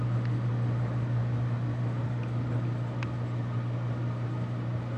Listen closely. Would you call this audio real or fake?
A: real